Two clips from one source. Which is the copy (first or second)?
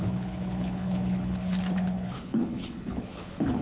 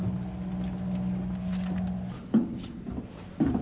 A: first